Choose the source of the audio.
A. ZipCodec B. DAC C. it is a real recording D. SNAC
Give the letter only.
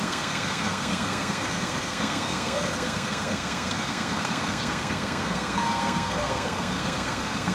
D